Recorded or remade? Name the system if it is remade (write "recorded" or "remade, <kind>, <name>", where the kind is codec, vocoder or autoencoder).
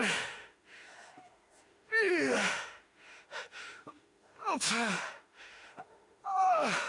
remade, autoencoder, DAC-VAE